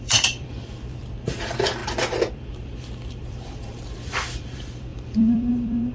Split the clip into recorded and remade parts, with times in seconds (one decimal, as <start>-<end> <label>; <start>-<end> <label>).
0.0-1.8 remade; 1.8-2.3 recorded; 2.3-5.9 remade

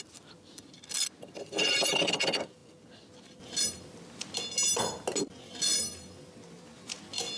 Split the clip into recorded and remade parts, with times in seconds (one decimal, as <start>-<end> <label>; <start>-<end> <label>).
0.0-7.4 recorded

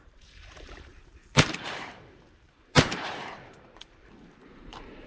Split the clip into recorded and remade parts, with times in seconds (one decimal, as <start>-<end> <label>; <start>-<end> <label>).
0.0-5.1 remade